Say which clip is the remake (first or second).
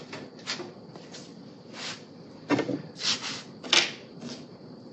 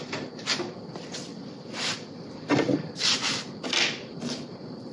second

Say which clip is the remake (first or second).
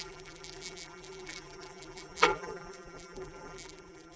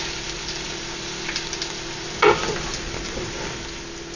first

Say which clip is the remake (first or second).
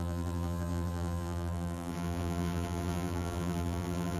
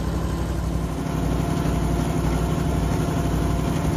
first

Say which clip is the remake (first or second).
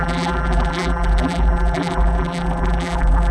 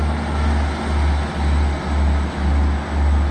first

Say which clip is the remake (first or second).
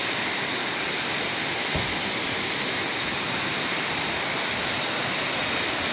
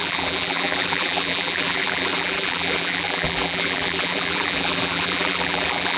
second